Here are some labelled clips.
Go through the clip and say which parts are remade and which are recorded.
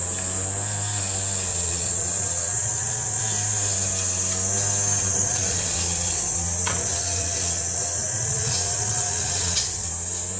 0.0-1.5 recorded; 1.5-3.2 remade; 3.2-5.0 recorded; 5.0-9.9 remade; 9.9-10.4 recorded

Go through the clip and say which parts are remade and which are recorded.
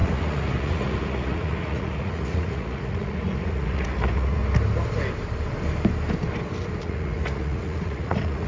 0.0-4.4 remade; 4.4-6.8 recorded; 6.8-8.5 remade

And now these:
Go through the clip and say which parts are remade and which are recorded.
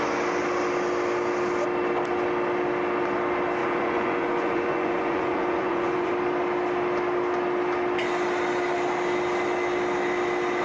0.0-3.6 recorded; 3.6-6.1 remade; 6.1-10.6 recorded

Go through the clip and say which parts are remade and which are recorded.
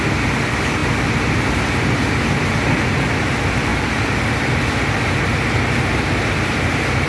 0.0-7.1 recorded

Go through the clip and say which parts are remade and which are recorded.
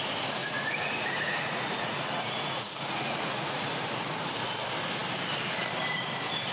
0.0-0.4 recorded; 0.4-3.7 remade; 3.7-6.5 recorded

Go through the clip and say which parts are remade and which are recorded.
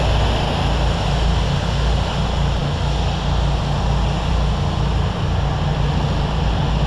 0.0-6.9 recorded